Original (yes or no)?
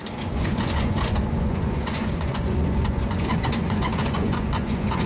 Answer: no